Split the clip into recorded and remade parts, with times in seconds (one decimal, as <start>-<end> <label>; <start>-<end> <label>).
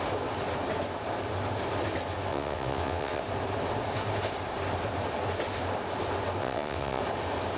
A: 0.0-2.3 recorded; 2.3-3.2 remade; 3.2-6.4 recorded; 6.4-7.0 remade; 7.0-7.6 recorded